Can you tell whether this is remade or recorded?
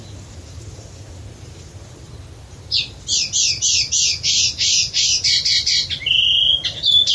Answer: recorded